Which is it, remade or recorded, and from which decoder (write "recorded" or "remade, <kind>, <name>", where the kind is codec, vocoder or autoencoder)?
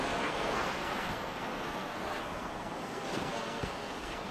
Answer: remade, codec, SNAC